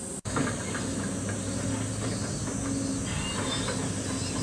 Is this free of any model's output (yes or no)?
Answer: yes